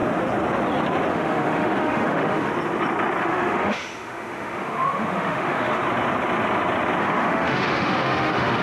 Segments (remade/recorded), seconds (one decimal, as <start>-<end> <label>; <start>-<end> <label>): 0.0-1.1 recorded; 1.1-2.5 remade; 2.5-3.2 recorded; 3.2-5.8 remade; 5.8-7.0 recorded; 7.0-8.6 remade